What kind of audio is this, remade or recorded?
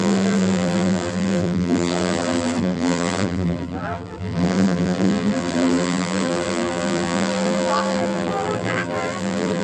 remade